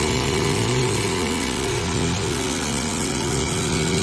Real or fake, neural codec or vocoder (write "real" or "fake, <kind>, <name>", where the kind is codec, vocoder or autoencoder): fake, vocoder, Vocos